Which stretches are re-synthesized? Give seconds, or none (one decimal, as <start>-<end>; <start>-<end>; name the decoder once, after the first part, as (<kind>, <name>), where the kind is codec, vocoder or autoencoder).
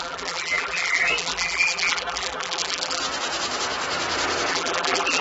0.0-3.0 (vocoder, BigVGAN v2); 4.5-5.2